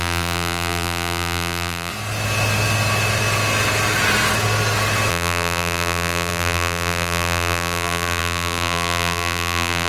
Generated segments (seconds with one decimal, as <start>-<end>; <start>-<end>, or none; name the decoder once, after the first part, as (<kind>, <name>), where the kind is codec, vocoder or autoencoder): 0.0-1.9 (vocoder, BigVGAN v2); 5.1-9.9